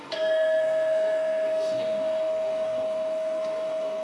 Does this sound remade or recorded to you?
remade